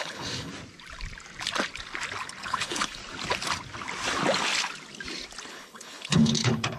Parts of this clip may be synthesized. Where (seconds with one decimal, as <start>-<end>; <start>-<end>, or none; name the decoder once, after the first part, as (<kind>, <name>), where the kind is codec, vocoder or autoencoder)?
0.0-0.5 (codec, HILCodec); 2.4-3.0; 5.5-6.8